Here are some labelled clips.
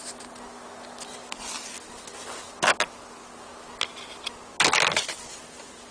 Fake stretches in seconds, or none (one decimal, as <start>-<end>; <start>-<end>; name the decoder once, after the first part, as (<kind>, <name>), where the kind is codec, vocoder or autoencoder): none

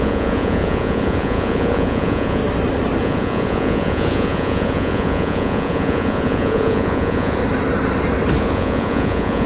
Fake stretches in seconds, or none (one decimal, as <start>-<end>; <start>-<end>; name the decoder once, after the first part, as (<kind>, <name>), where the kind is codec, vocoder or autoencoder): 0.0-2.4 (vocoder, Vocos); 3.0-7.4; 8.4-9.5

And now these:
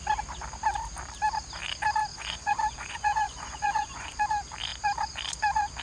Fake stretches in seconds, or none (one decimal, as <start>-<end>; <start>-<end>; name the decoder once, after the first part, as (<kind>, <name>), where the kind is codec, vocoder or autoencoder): 2.1-4.2 (vocoder, Vocos)